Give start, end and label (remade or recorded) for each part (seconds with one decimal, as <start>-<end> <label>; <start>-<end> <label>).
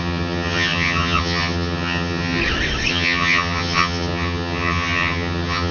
0.0-2.4 remade; 2.4-2.9 recorded; 2.9-5.7 remade